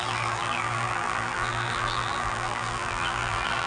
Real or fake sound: fake